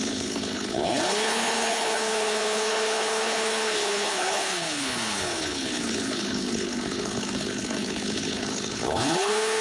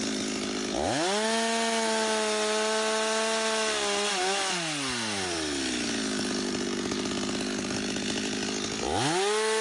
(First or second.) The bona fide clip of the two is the second